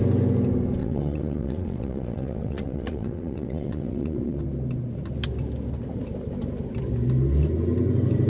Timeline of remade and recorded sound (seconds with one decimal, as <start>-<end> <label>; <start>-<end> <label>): 0.0-0.8 recorded; 0.8-4.4 remade; 4.4-8.3 recorded